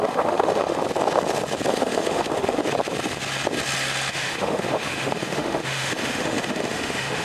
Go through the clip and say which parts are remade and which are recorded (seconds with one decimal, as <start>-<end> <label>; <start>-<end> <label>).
0.0-0.8 remade; 0.8-1.7 recorded; 1.7-2.6 remade; 2.6-4.1 recorded; 4.1-7.2 remade